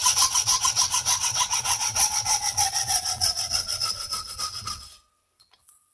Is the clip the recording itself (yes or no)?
no